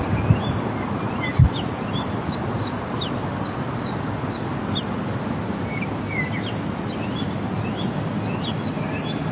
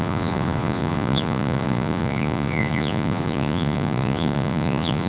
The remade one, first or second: second